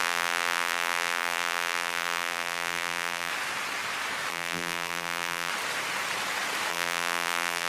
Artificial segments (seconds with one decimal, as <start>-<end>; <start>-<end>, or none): 0.0-3.3; 4.3-5.5; 6.7-7.7